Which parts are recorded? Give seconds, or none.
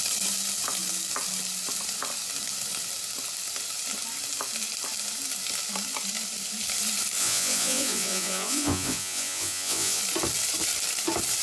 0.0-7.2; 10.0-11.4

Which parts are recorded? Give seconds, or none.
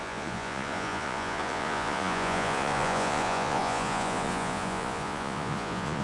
none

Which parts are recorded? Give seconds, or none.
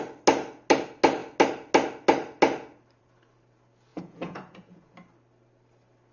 0.0-3.9; 4.9-6.1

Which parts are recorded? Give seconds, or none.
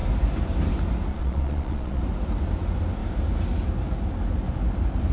0.0-1.1; 2.0-5.1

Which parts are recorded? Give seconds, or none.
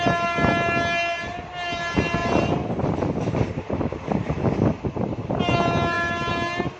0.0-6.8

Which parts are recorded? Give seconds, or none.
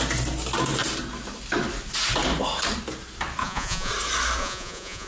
0.0-3.4; 3.9-4.4